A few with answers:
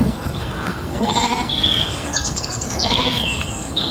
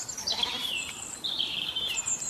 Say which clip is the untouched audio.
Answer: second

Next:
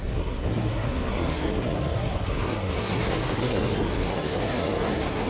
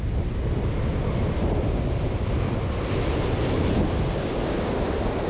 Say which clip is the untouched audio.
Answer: second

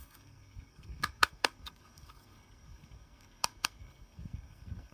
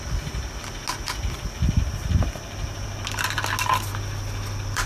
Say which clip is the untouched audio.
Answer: second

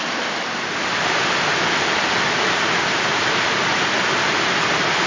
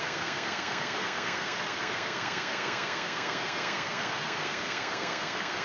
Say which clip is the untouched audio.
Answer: first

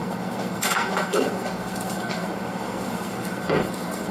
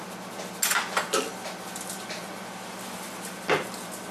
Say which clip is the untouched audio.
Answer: second